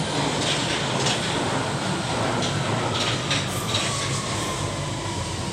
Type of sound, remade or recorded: recorded